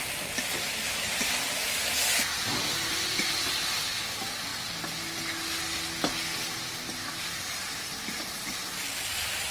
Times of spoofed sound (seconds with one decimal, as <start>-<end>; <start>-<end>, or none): none